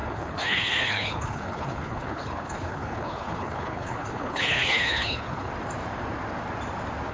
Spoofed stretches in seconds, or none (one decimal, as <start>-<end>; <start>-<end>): 0.0-5.5